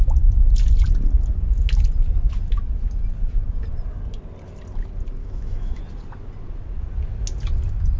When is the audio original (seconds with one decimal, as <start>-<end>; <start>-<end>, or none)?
0.0-5.2; 5.8-8.0